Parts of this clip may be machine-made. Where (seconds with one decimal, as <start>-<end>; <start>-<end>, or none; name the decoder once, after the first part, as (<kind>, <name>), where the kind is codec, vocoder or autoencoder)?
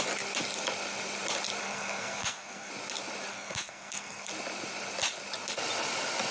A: 1.6-2.7 (codec, SNAC); 3.3-4.3